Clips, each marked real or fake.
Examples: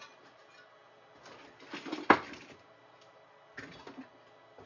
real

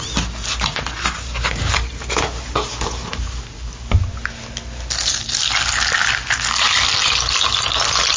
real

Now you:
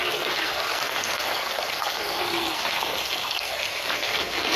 fake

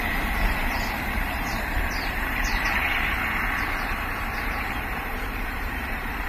fake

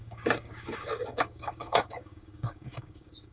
fake